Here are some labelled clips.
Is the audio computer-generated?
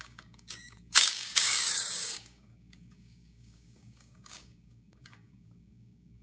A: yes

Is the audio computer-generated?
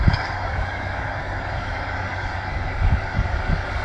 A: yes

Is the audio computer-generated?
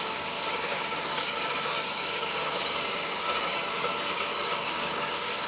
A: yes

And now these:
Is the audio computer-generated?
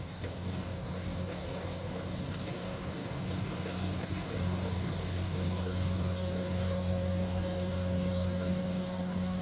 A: yes